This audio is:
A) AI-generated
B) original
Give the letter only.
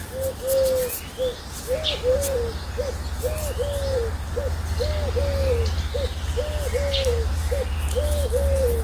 B